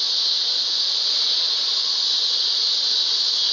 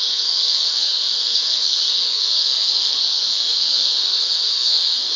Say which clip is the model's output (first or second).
second